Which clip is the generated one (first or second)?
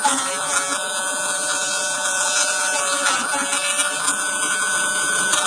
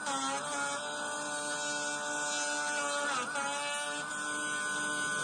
first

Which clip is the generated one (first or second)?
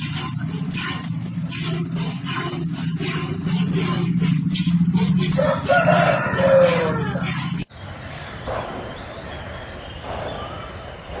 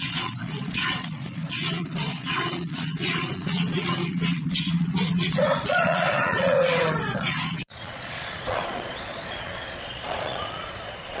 second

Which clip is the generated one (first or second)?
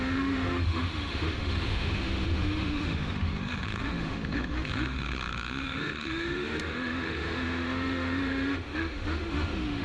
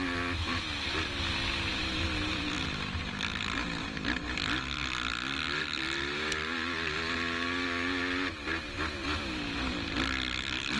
first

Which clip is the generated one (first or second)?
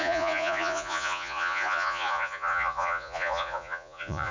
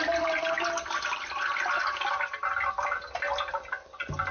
first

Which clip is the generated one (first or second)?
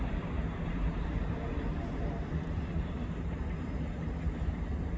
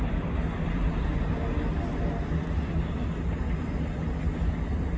first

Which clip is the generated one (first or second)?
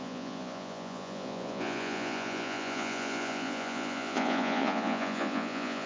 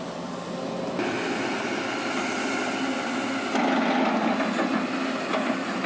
first